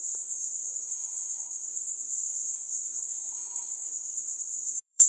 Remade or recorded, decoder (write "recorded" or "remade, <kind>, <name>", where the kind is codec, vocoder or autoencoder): remade, codec, SNAC